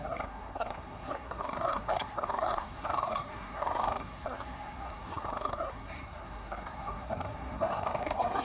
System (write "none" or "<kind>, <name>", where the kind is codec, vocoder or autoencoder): codec, SNAC